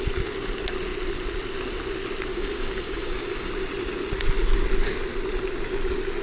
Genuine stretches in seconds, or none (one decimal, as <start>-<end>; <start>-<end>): 0.0-2.3; 3.5-6.2